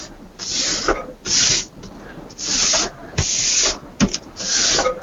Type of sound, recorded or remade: recorded